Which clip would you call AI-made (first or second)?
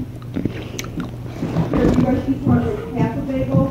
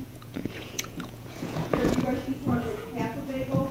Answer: second